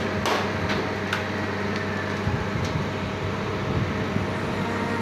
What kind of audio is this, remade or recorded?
recorded